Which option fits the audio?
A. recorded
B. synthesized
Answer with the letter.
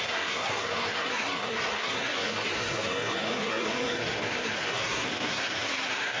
B